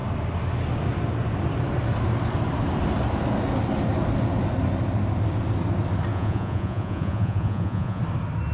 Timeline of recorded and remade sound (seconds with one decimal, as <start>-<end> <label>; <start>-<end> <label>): 0.0-6.1 recorded; 6.1-8.0 remade; 8.0-8.5 recorded